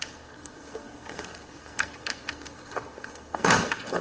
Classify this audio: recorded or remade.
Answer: remade